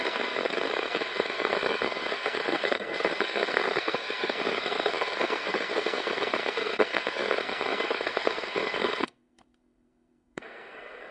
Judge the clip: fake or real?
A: fake